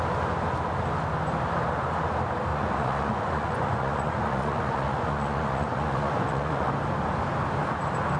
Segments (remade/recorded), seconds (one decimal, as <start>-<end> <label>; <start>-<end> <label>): 0.0-2.5 recorded; 2.5-6.7 remade; 6.7-8.2 recorded